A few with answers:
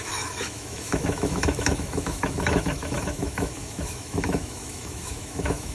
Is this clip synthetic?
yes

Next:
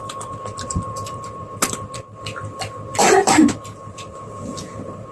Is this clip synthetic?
yes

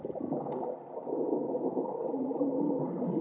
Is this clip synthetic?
no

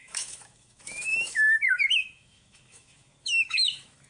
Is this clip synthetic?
yes